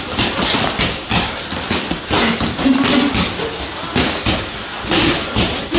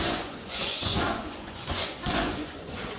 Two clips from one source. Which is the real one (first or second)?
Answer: first